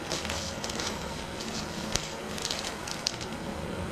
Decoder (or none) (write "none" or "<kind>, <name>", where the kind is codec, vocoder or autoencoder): codec, SNAC